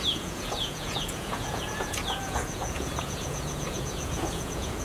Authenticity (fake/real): fake